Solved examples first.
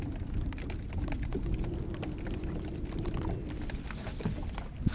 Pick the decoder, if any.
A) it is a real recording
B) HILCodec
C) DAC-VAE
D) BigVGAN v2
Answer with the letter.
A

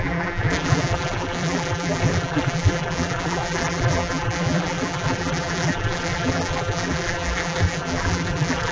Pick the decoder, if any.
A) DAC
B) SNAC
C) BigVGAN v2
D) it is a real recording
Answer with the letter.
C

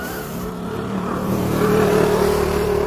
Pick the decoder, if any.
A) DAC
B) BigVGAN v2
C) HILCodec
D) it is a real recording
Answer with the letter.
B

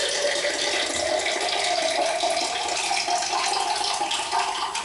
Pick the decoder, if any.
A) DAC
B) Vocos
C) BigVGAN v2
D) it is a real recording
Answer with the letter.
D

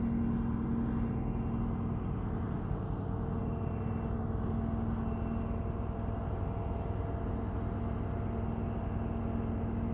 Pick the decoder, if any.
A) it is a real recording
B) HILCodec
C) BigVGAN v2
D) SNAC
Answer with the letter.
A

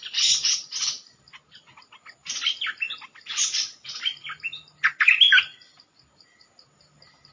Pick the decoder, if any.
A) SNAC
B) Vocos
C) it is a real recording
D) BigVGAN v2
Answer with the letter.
C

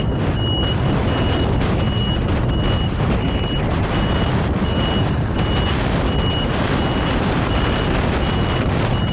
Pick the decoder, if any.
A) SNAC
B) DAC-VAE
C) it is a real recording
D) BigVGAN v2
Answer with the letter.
C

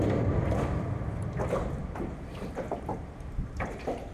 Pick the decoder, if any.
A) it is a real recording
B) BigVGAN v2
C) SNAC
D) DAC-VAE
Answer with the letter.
B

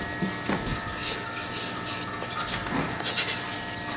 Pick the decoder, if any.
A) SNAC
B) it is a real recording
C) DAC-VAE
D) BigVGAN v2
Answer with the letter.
B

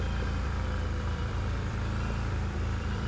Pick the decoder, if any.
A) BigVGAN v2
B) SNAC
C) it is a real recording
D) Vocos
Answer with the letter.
A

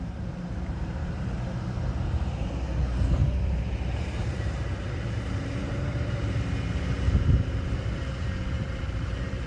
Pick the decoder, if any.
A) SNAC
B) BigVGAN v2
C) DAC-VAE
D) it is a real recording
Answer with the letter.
B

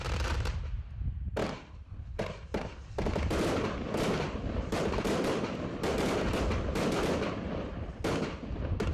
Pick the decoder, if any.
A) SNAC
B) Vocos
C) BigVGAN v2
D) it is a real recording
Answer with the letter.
C